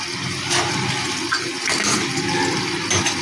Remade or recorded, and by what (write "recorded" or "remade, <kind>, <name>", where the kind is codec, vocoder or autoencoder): recorded